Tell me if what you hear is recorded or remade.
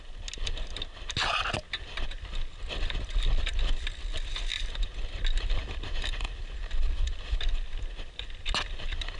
recorded